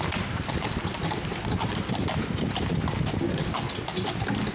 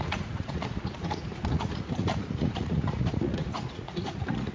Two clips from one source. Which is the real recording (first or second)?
first